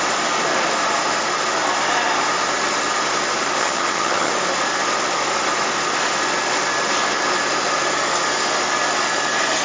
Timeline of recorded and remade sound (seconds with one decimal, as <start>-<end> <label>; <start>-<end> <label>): 0.0-3.6 recorded; 3.6-4.3 remade; 4.3-9.6 recorded